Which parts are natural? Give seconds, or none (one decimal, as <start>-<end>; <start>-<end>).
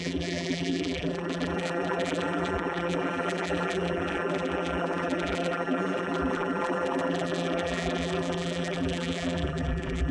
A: none